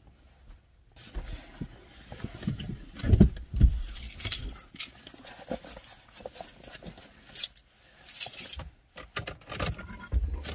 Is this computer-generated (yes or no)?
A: no